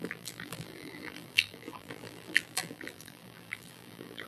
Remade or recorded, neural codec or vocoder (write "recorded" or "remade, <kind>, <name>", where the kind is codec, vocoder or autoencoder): remade, vocoder, BigVGAN v2